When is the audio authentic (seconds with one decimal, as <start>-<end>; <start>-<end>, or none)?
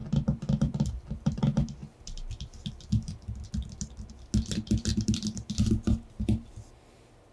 1.4-4.9; 5.5-7.3